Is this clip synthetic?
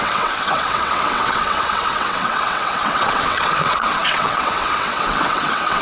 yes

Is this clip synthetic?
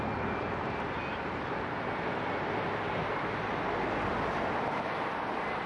no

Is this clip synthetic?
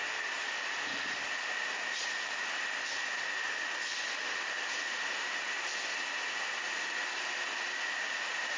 no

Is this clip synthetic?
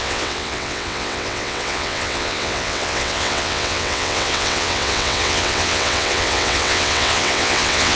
yes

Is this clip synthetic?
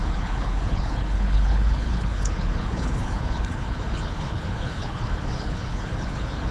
yes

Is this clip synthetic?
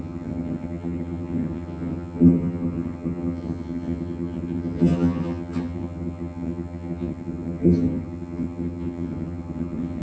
yes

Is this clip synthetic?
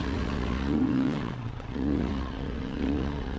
yes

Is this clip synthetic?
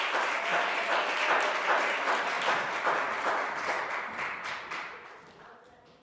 yes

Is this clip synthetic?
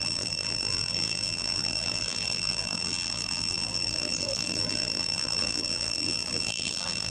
yes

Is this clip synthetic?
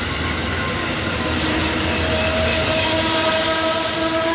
no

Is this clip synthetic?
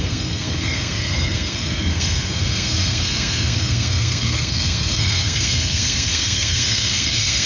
yes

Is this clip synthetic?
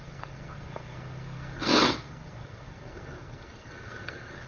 yes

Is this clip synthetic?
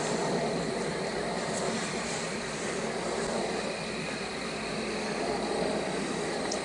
no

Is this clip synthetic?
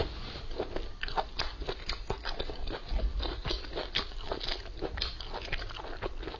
no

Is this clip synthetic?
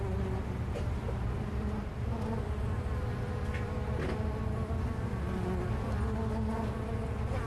no